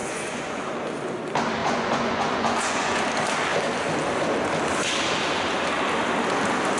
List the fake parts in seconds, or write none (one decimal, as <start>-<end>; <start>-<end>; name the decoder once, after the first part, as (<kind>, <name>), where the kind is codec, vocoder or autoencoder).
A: 0.0-0.6 (vocoder, Vocos); 1.6-3.0